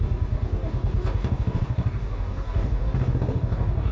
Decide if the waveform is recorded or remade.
remade